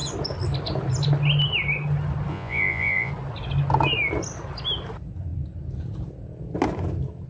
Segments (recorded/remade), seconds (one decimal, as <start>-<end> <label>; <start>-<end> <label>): 0.0-2.3 recorded; 2.3-3.1 remade; 3.1-7.3 recorded